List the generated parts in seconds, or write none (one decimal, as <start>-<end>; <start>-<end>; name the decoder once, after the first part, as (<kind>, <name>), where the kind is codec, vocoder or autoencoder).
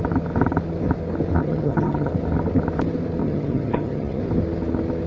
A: 1.4-2.1 (vocoder, HiFi-GAN); 3.2-4.2